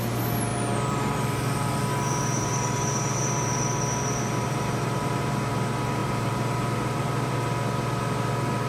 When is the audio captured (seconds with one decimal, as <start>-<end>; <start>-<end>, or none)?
0.0-0.5; 5.5-6.0; 7.3-8.7